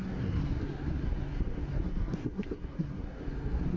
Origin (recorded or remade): remade